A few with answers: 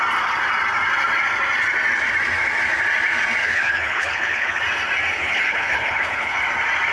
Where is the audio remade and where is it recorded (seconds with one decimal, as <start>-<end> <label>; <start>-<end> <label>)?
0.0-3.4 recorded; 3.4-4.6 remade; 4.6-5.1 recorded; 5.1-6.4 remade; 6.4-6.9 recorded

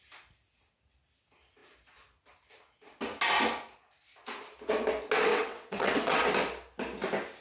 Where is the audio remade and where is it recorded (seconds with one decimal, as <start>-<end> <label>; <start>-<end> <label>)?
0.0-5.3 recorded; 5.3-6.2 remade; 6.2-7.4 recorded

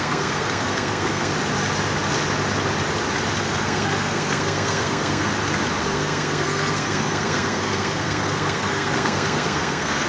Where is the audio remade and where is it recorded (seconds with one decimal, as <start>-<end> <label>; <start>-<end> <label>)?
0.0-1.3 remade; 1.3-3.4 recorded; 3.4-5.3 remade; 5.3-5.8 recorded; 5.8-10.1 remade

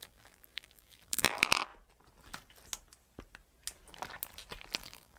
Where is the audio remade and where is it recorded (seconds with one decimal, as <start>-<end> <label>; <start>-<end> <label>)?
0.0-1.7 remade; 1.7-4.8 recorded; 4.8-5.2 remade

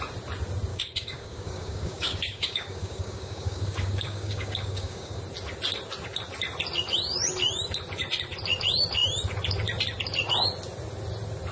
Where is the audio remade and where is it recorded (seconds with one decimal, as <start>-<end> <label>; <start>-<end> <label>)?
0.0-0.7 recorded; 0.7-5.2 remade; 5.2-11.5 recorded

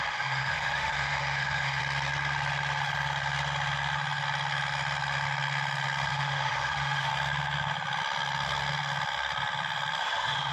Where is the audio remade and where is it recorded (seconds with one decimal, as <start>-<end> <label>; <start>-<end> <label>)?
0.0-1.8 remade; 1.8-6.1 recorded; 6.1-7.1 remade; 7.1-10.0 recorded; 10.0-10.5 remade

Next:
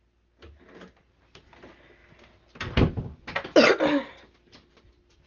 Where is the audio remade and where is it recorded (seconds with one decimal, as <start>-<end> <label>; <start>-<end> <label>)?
0.0-5.3 recorded

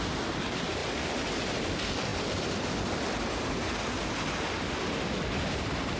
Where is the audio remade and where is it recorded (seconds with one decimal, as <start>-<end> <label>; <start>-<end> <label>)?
0.0-6.0 recorded